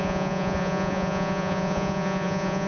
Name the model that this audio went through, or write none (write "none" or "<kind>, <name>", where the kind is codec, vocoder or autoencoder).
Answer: vocoder, Vocos